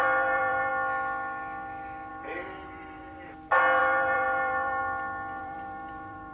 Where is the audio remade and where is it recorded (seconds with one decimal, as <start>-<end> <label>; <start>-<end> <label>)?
0.0-0.7 remade; 0.7-2.1 recorded; 2.1-3.0 remade; 3.0-3.8 recorded; 3.8-4.8 remade; 4.8-5.4 recorded; 5.4-6.3 remade